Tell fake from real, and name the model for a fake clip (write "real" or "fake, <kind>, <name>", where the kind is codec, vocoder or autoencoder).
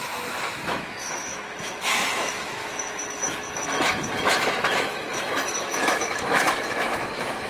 fake, autoencoder, DAC-VAE